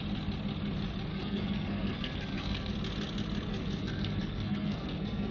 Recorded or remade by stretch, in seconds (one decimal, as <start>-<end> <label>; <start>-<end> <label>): 0.0-1.1 recorded; 1.1-2.7 remade; 2.7-3.5 recorded; 3.5-5.3 remade